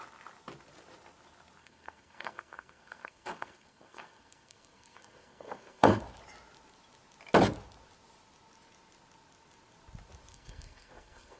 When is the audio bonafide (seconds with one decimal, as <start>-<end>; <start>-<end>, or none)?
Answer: 0.0-1.6; 6.0-10.3